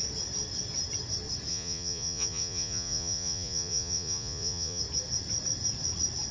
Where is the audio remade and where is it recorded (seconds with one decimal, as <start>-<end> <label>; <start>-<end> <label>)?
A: 0.0-1.5 recorded; 1.5-4.8 remade; 4.8-6.3 recorded